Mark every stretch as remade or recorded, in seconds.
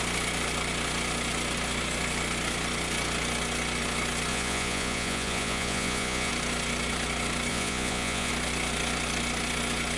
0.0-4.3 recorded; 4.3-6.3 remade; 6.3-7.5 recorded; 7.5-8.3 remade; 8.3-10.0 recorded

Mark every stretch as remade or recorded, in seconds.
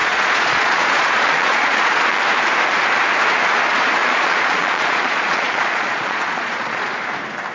0.0-2.2 remade; 2.2-4.0 recorded; 4.0-6.9 remade; 6.9-7.5 recorded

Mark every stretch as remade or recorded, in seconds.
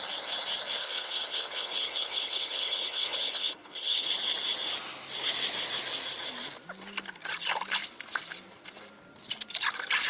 0.0-0.8 recorded; 0.8-4.1 remade; 4.1-10.1 recorded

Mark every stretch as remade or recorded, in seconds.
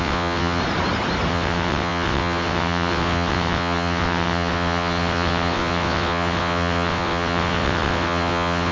0.0-0.6 remade; 0.6-1.3 recorded; 1.3-8.7 remade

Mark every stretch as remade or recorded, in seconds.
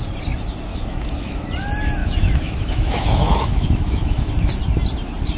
0.0-0.7 recorded; 0.7-1.4 remade; 1.4-2.0 recorded; 2.0-4.3 remade; 4.3-5.4 recorded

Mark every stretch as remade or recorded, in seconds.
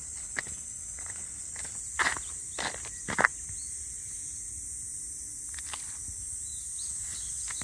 0.0-1.8 remade; 1.8-7.6 recorded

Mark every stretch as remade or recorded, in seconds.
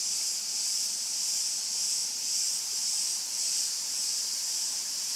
0.0-2.0 recorded; 2.0-5.2 remade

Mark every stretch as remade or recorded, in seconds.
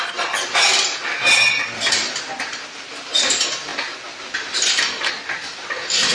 0.0-6.1 recorded